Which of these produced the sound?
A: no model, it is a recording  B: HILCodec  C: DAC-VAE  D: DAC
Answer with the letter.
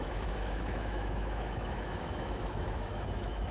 C